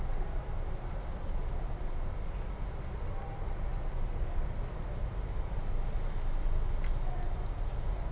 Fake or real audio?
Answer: real